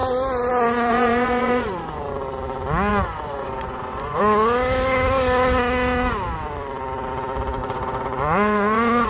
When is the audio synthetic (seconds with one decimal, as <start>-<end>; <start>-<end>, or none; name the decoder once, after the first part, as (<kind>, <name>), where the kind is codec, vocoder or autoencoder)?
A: 0.9-2.0 (vocoder, Vocos); 2.9-4.2; 7.6-9.1